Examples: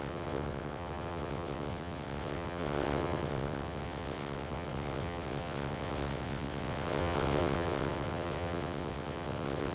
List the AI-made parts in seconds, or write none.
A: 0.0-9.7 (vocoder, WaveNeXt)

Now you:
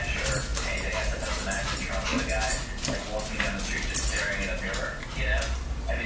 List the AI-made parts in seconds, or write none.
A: none